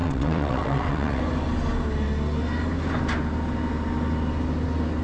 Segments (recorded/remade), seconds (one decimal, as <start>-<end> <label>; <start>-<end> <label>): 0.0-1.2 remade; 1.2-5.0 recorded